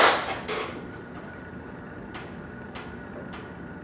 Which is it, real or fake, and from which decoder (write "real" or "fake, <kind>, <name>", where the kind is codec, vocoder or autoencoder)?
real